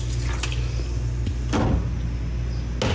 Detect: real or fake real